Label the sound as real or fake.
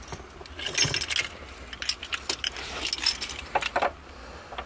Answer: real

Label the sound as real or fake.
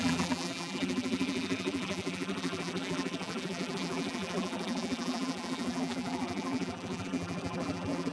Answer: fake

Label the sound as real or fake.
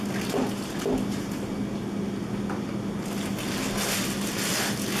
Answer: real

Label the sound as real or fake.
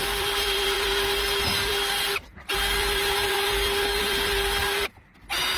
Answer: fake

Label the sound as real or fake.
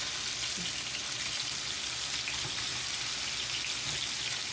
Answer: real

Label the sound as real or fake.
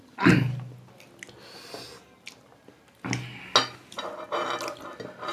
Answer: real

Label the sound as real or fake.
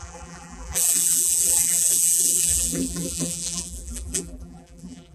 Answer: fake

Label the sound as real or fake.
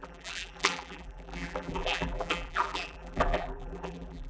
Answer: fake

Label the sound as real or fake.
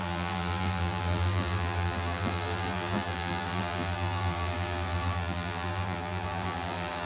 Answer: fake